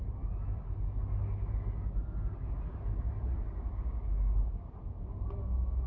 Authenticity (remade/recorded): recorded